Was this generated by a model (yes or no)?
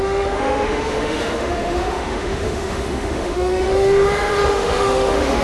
yes